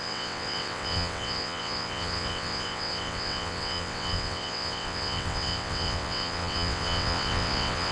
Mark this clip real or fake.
fake